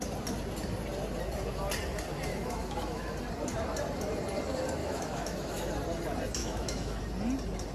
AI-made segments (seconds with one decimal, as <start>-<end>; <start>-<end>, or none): 2.3-3.1; 4.8-5.7; 6.4-7.0